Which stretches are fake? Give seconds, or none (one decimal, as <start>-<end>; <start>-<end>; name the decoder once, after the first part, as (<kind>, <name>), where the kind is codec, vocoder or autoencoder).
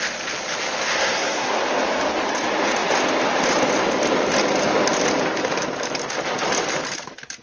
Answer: 0.9-1.5 (codec, SNAC)